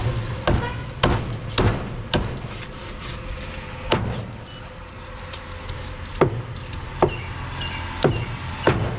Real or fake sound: real